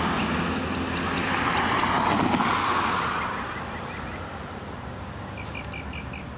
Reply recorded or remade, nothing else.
recorded